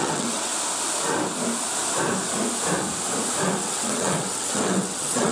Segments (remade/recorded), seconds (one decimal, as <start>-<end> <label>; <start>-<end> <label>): 0.0-0.5 remade; 0.5-3.6 recorded; 3.6-5.3 remade